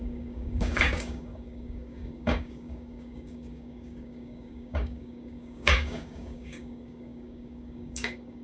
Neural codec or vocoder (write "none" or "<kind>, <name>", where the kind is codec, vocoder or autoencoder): codec, DAC